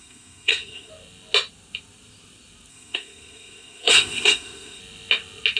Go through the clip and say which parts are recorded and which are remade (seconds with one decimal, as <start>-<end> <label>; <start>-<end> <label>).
0.0-0.9 remade; 0.9-2.7 recorded; 2.7-4.8 remade; 4.8-5.6 recorded